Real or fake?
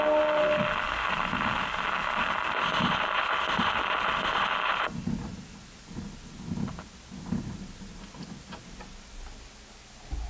real